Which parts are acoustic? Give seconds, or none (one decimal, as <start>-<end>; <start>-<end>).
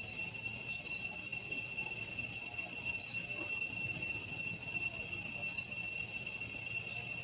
0.0-7.2